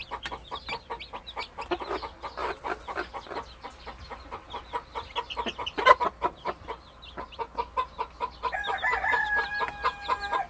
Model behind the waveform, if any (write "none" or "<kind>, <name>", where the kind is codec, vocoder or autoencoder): none